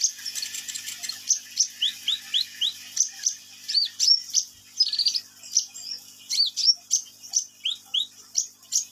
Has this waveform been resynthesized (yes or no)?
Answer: no